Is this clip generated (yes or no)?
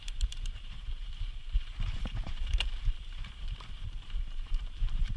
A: yes